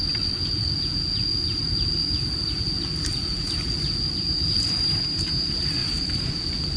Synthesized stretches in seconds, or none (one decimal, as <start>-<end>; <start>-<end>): 5.8-6.3